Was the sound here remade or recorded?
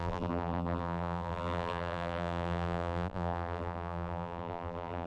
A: remade